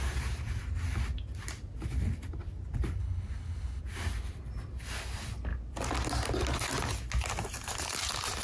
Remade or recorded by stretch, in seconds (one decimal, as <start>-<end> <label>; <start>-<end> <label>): 0.0-3.0 recorded; 3.0-3.8 remade; 3.8-8.4 recorded